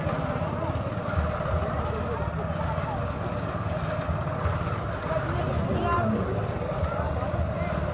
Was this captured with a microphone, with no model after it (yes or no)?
yes